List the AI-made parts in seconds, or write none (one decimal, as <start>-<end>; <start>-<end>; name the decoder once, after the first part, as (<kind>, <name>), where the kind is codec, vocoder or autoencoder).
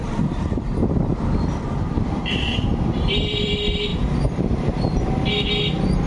0.0-0.6 (vocoder, BigVGAN v2); 1.1-3.5; 3.9-5.0